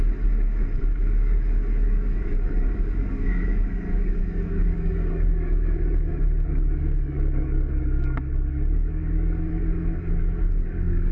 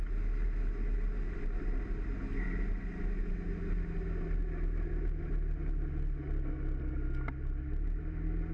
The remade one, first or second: first